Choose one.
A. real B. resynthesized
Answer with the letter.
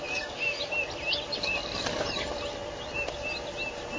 A